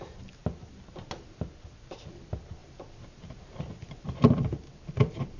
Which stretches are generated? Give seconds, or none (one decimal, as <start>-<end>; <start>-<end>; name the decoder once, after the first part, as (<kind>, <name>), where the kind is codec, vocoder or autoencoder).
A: none